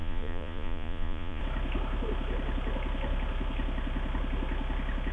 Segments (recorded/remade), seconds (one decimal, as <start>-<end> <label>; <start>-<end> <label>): 0.0-1.4 remade; 1.4-5.1 recorded